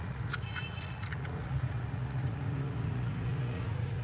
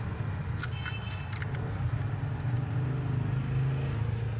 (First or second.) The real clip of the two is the second